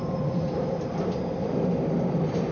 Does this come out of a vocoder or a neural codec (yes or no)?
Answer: yes